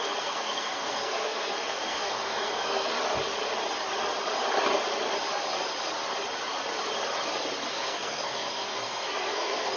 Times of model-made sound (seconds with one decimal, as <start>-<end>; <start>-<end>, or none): 0.0-2.9; 7.7-9.8